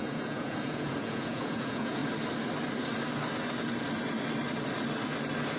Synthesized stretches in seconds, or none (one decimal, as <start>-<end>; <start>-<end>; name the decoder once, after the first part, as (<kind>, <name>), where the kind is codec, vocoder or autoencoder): 0.0-2.0 (vocoder, Vocos)